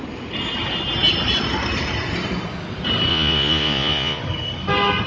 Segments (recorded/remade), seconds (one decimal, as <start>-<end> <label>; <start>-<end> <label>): 0.0-3.1 recorded; 3.1-4.2 remade; 4.2-5.1 recorded